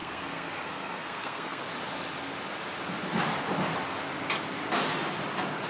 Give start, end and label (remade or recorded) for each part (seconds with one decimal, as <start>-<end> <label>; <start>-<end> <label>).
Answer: 0.0-1.7 remade; 1.7-5.7 recorded